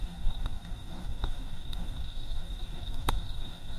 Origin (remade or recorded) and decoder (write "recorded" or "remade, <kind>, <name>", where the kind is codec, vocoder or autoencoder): remade, codec, DAC